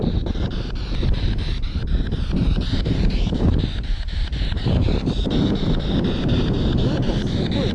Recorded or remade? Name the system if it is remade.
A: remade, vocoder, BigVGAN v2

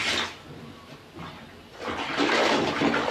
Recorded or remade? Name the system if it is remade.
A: recorded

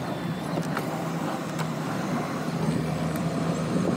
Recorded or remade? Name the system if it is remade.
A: remade, vocoder, BigVGAN v2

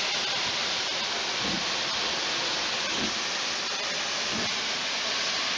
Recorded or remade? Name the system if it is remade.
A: recorded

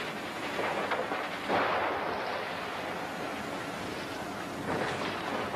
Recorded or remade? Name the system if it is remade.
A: recorded